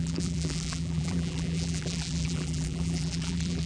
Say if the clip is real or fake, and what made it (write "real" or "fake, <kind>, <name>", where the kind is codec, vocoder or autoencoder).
fake, vocoder, BigVGAN v2